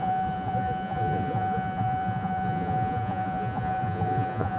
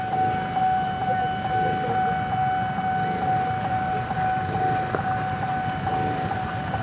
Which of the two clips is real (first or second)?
second